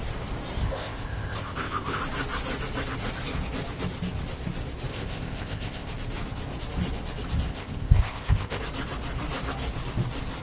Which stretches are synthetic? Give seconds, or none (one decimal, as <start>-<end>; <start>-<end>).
0.6-2.0; 4.9-5.9; 7.5-8.6